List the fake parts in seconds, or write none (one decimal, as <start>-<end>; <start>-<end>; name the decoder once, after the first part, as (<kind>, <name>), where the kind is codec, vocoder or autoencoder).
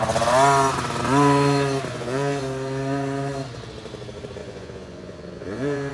1.9-2.4 (vocoder, Vocos); 4.4-5.9